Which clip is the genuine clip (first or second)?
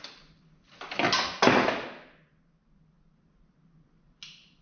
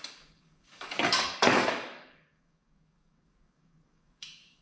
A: first